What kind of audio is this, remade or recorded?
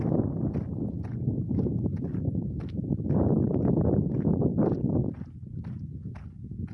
recorded